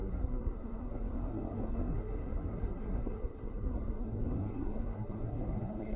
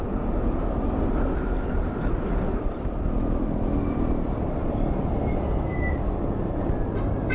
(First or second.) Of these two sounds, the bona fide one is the second